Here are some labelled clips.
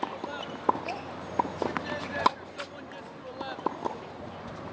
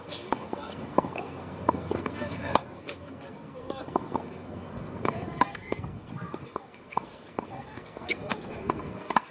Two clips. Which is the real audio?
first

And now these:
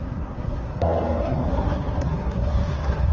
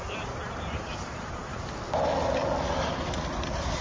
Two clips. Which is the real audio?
second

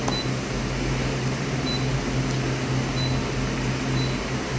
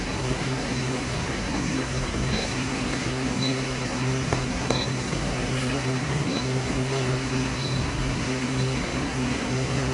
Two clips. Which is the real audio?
first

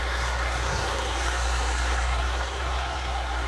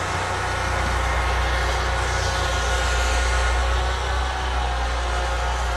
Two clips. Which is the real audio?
second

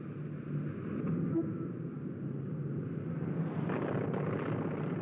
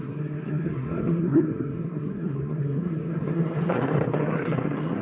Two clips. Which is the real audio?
first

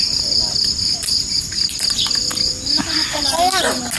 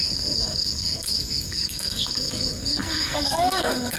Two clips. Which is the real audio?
first